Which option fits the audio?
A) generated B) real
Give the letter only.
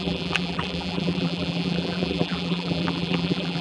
A